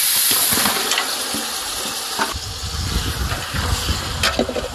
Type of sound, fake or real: real